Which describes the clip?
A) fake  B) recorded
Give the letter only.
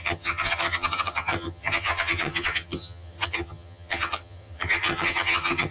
A